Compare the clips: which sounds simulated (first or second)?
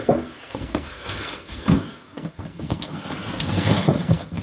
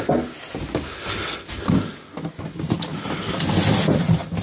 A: first